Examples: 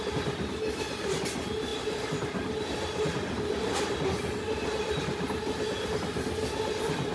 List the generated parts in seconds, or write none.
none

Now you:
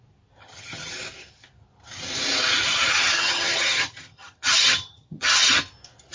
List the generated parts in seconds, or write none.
0.4-0.9; 2.5-5.6

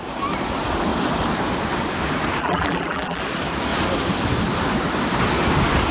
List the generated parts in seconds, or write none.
2.4-3.2

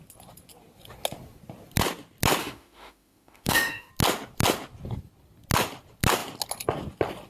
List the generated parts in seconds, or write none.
2.4-3.9

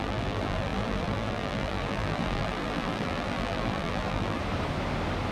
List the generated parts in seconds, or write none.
0.0-4.4

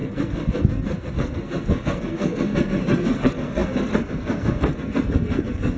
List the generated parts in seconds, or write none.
0.0-5.8

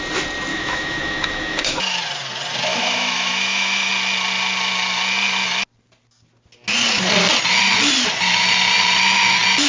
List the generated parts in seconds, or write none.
0.5-1.8; 2.7-3.9

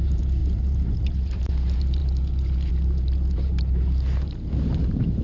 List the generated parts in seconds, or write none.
0.0-2.0; 2.7-5.2